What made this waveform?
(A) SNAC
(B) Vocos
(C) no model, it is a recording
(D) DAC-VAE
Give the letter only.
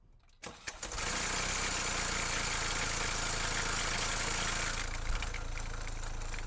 C